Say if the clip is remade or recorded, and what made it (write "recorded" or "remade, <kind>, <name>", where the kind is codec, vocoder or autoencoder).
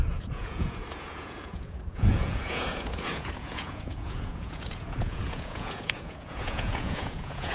remade, vocoder, Vocos